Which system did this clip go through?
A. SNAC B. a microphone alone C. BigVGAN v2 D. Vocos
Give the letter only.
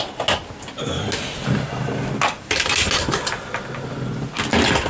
B